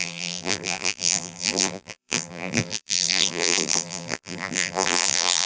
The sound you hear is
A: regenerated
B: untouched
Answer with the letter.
A